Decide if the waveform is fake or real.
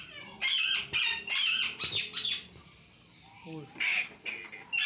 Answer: real